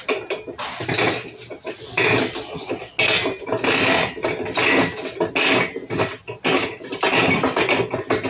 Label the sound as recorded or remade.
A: recorded